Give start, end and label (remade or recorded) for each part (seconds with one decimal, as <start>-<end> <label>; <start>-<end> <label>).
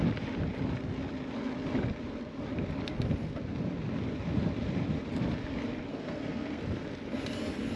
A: 0.0-5.9 recorded; 5.9-6.6 remade; 6.6-7.8 recorded